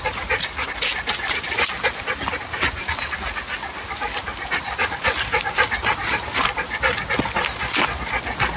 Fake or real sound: real